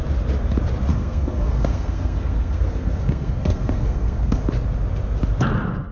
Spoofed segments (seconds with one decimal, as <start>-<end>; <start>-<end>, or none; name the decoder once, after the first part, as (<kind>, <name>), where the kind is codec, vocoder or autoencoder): 0.9-4.4 (codec, SNAC)